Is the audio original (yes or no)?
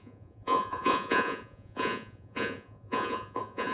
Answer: no